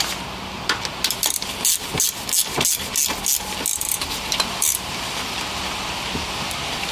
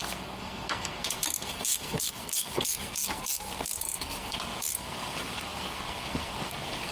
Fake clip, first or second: second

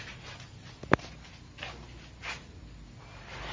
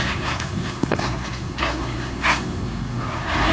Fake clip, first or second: second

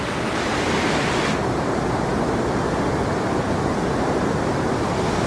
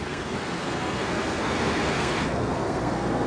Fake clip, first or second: second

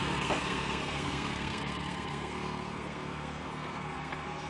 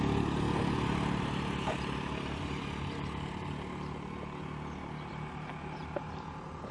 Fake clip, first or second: first